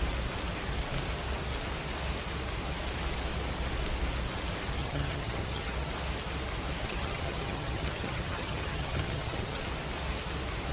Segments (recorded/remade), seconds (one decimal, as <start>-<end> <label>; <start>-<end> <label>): 0.0-4.8 recorded; 4.8-5.9 remade; 5.9-6.8 recorded; 6.8-9.6 remade; 9.6-10.7 recorded